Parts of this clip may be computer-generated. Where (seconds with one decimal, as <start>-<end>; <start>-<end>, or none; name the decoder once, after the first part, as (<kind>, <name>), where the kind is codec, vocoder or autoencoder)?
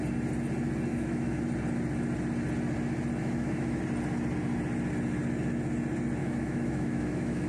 0.9-1.4 (autoencoder, DAC-VAE); 3.2-3.8; 6.2-7.5